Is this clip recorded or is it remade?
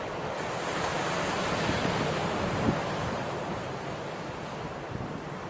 recorded